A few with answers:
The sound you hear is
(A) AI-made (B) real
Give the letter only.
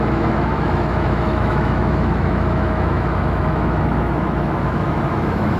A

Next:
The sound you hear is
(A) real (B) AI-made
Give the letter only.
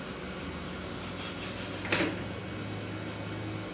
A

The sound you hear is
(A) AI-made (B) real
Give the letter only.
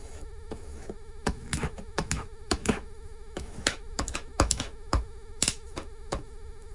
A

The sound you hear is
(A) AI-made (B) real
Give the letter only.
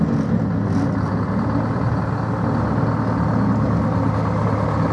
B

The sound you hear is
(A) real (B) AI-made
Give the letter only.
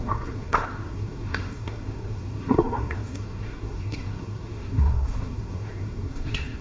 B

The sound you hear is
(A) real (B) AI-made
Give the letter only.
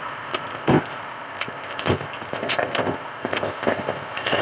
B